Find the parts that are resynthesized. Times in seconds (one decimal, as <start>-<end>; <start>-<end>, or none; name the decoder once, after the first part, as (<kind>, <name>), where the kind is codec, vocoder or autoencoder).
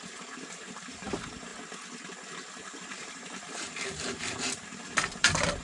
0.0-1.5 (vocoder, BigVGAN v2); 2.5-5.6